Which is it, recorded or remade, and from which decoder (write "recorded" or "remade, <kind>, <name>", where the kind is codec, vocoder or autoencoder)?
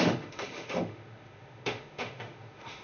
remade, autoencoder, DAC-VAE